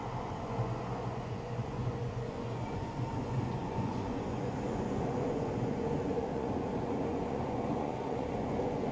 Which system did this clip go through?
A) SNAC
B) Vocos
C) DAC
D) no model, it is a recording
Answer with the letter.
B